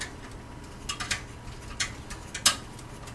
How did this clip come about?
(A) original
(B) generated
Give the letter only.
A